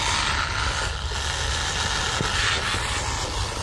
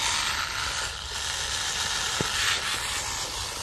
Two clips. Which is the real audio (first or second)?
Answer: first